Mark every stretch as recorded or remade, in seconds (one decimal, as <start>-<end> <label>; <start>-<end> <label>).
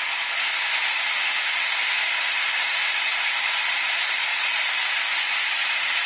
0.0-4.3 recorded; 4.3-4.9 remade; 4.9-6.1 recorded